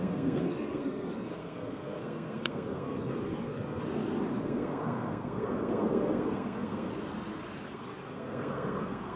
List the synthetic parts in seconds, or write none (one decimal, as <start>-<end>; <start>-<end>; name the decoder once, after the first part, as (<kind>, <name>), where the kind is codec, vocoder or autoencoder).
0.0-3.8 (codec, SNAC); 4.4-6.9; 7.7-9.2